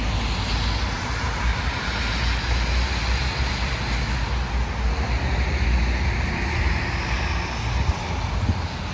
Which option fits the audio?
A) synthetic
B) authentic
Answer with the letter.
B